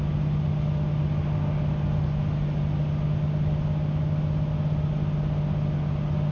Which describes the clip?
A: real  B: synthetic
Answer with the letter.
A